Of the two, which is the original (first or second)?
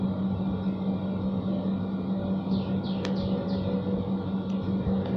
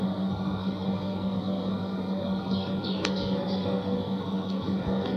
first